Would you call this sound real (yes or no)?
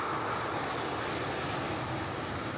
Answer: yes